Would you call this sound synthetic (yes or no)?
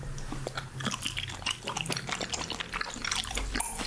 no